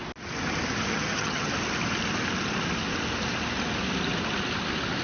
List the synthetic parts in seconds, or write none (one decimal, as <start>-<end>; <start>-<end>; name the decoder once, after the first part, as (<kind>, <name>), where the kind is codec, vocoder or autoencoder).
0.9-1.5 (vocoder, HiFi-GAN)